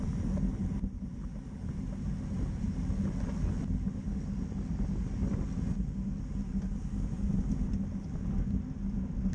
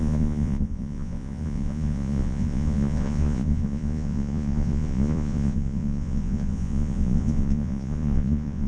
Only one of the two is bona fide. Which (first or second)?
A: first